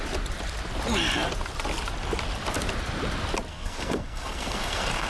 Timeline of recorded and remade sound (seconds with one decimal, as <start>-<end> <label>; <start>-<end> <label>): 0.0-3.5 recorded; 3.5-5.1 remade